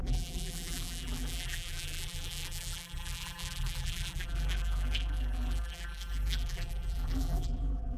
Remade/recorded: remade